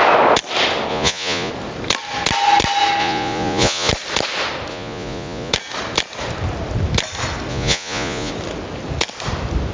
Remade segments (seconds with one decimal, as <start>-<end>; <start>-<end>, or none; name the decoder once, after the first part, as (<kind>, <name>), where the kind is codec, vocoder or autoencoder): 0.9-1.5 (vocoder, Vocos); 3.0-3.9; 4.7-5.5; 7.5-8.3